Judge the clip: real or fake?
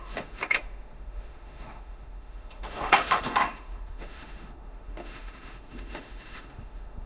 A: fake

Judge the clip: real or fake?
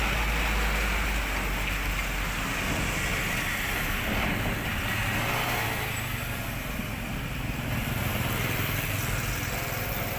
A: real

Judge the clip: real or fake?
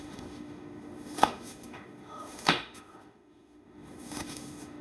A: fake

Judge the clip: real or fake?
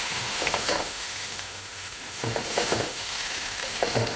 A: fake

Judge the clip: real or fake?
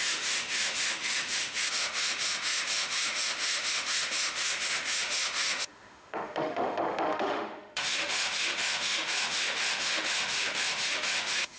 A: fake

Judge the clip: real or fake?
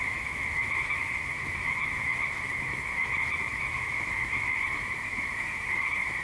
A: fake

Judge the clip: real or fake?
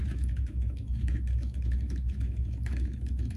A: fake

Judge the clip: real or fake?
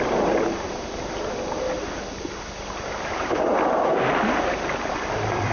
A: real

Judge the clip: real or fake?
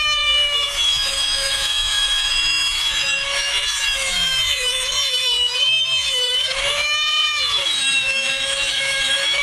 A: fake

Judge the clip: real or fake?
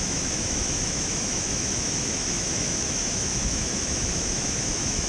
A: fake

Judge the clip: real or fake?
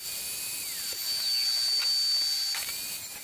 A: real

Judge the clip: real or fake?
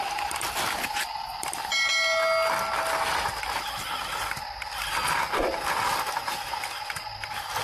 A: real